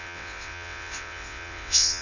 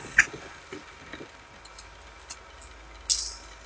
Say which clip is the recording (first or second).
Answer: second